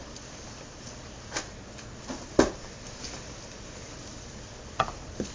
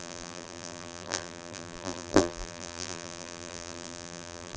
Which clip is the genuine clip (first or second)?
first